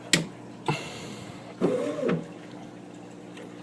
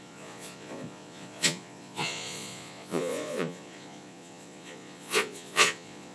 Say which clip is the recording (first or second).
first